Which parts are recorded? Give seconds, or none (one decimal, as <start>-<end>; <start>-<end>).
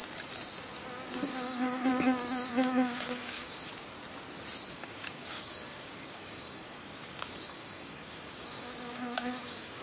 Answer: 0.0-1.1; 1.9-2.5; 3.7-4.7